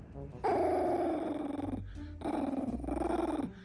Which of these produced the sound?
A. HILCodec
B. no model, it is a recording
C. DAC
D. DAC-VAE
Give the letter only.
B